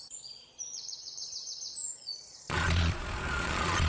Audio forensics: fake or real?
fake